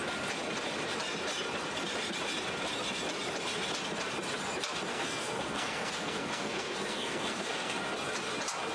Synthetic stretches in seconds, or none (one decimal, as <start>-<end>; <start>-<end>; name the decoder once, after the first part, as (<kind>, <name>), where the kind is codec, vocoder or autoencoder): 4.9-7.8 (codec, SNAC)